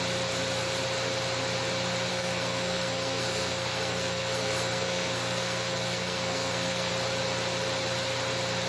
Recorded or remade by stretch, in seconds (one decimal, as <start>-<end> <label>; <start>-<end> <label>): 0.0-2.1 recorded; 2.1-6.9 remade; 6.9-8.7 recorded

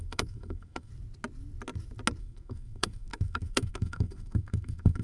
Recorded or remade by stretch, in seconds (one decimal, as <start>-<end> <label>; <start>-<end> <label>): 0.0-0.9 remade; 0.9-2.2 recorded; 2.2-5.0 remade

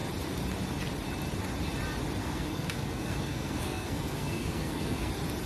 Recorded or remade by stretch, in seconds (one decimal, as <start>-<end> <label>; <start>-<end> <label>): 0.0-2.2 recorded; 2.2-5.1 remade; 5.1-5.5 recorded